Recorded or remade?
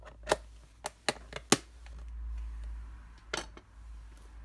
recorded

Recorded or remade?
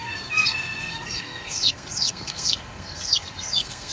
remade